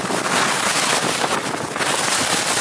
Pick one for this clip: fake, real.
real